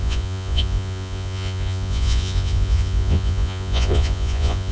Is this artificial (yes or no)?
yes